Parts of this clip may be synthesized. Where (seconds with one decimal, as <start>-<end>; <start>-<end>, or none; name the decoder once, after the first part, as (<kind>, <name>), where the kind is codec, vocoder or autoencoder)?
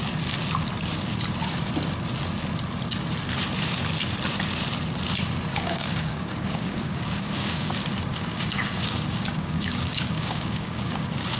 5.5-7.7 (codec, DAC); 8.1-11.4